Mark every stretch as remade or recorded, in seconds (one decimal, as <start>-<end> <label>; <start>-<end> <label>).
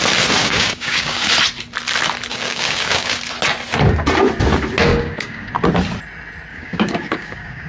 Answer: 0.0-0.4 recorded; 0.4-1.3 remade; 1.3-2.3 recorded; 2.3-3.2 remade; 3.2-4.9 recorded; 4.9-5.5 remade; 5.5-6.5 recorded; 6.5-7.7 remade